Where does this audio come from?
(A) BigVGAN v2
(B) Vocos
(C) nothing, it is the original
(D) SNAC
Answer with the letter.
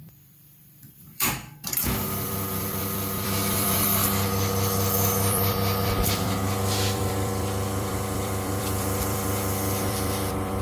A